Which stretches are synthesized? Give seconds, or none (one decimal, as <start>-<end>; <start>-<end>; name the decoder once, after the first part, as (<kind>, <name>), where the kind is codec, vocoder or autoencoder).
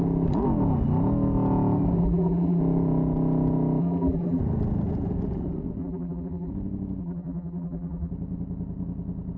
2.0-2.6 (vocoder, BigVGAN v2); 3.8-4.4; 5.8-6.5; 7.0-8.1